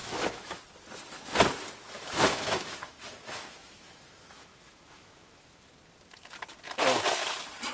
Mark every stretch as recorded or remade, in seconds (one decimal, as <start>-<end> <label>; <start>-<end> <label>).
0.0-0.6 remade; 0.6-1.8 recorded; 1.8-5.7 remade; 5.7-7.7 recorded